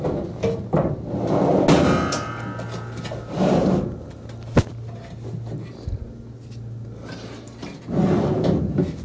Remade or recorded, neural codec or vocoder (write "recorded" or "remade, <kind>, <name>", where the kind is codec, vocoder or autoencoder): recorded